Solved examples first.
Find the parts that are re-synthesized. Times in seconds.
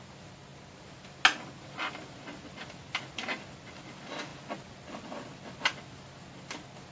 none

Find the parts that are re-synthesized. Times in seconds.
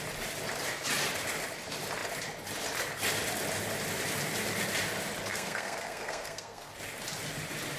5.3-6.7 (codec, SNAC)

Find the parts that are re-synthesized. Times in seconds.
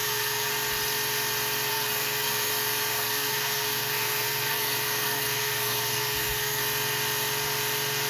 0.0-0.5 (codec, SNAC); 1.7-2.5; 2.9-6.6